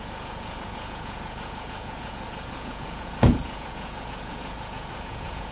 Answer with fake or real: fake